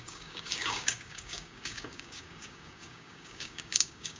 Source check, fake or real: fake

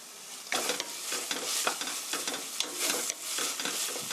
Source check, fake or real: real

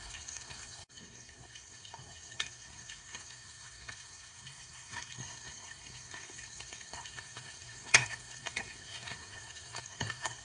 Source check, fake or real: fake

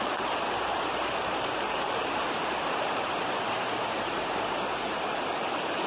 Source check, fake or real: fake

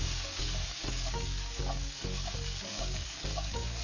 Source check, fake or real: fake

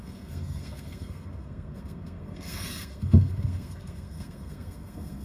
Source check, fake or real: fake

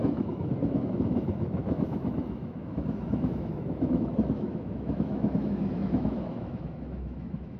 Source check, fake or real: fake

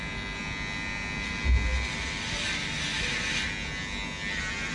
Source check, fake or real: real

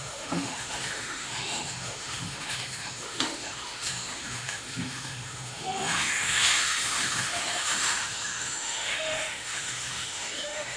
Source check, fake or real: fake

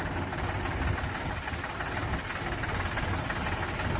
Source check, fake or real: real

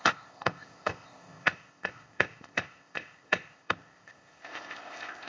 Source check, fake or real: fake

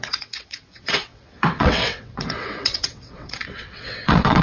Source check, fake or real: fake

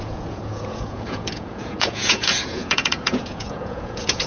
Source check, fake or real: fake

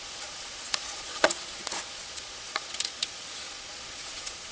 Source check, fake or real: fake